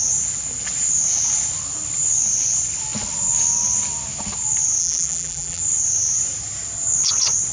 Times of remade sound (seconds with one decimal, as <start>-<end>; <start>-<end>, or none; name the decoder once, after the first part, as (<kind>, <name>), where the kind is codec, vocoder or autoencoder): 4.8-5.6 (vocoder, BigVGAN v2)